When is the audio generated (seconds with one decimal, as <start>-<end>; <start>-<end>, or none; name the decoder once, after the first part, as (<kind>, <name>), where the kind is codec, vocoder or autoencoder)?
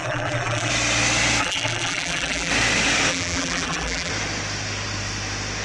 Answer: 0.0-0.7 (vocoder, BigVGAN v2); 1.4-2.5; 3.1-4.1